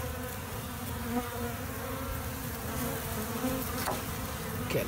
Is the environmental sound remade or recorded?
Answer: recorded